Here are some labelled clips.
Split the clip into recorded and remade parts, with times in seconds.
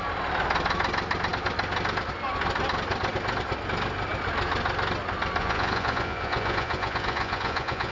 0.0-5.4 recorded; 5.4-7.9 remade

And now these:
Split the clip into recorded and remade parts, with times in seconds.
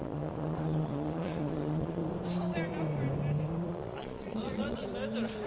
0.0-2.0 remade; 2.0-3.7 recorded; 3.7-4.8 remade; 4.8-5.5 recorded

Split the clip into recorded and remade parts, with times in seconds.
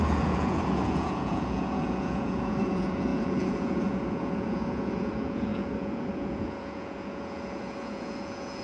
0.0-8.6 remade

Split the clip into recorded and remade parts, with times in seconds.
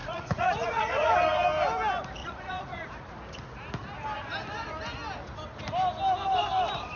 0.0-1.1 remade; 1.1-2.2 recorded; 2.2-2.9 remade; 2.9-7.0 recorded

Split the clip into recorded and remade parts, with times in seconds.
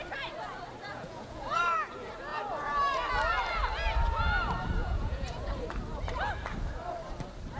0.0-0.9 recorded; 0.9-1.6 remade; 1.6-4.8 recorded; 4.8-5.5 remade; 5.5-7.6 recorded